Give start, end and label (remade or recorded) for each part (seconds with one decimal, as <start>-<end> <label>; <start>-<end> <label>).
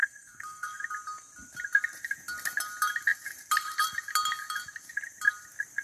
0.0-0.8 remade; 0.8-5.8 recorded